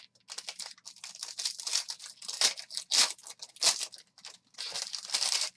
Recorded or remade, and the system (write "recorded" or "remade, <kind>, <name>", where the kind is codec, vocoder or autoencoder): recorded